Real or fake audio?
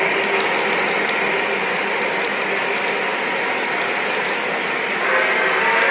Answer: real